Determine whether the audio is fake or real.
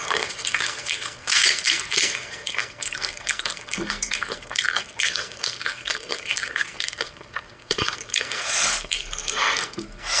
fake